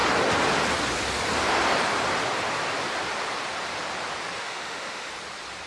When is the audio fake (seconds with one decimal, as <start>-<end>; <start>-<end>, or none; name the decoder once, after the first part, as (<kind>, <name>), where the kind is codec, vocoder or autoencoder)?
4.4-5.1 (autoencoder, DAC-VAE)